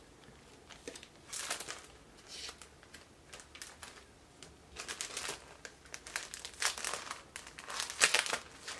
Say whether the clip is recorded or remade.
recorded